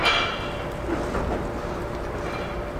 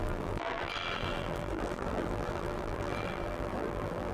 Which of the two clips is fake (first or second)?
second